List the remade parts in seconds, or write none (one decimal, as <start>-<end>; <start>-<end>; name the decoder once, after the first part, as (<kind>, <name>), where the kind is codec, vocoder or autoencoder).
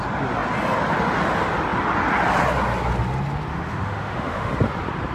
3.5-4.5 (autoencoder, DAC-VAE)